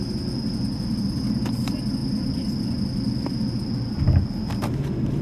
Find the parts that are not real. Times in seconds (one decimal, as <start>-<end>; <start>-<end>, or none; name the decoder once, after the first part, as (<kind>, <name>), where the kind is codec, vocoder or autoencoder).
none